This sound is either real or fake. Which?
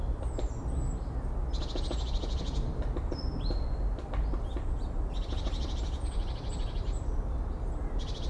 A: real